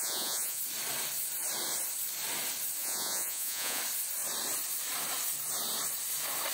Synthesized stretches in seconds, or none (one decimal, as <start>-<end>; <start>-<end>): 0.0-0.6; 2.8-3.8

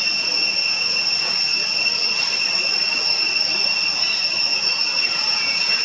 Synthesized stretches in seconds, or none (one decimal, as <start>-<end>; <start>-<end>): 0.0-1.6; 5.1-5.8

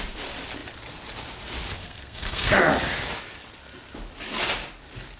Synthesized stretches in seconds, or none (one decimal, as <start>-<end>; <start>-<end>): 1.8-2.6

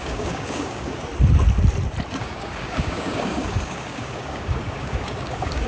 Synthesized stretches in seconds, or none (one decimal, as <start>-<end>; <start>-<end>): 0.0-1.1; 2.1-5.7